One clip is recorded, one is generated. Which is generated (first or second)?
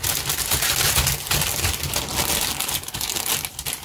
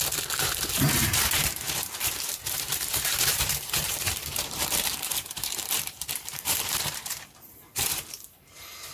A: second